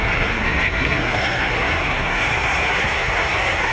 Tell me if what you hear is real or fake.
fake